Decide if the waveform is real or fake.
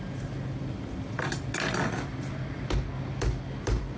real